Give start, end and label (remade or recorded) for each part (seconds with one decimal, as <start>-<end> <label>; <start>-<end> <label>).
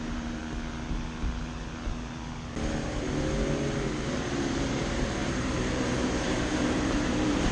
0.0-0.4 remade; 0.4-4.2 recorded; 4.2-7.5 remade